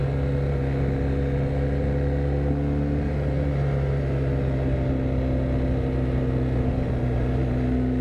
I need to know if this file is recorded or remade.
recorded